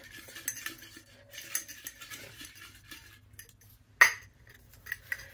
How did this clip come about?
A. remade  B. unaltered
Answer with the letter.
B